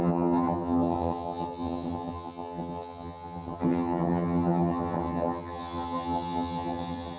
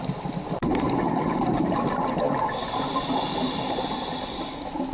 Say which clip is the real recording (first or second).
second